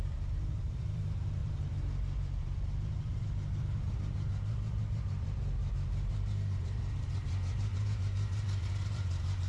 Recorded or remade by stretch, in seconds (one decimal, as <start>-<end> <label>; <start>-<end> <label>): 0.0-9.5 remade